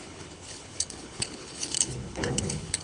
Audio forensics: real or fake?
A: fake